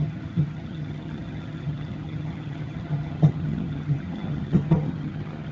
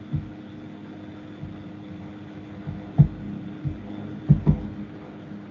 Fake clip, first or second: first